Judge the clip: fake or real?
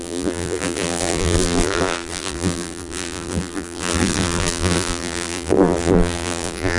fake